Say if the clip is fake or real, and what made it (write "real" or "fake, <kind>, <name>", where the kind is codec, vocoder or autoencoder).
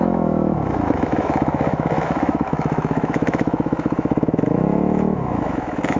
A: fake, autoencoder, DAC-VAE